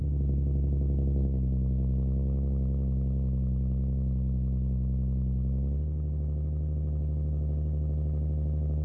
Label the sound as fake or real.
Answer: real